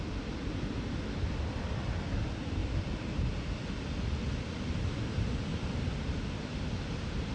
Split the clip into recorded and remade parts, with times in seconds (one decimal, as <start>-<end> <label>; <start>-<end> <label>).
0.0-7.3 recorded